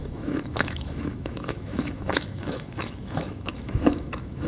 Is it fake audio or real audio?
fake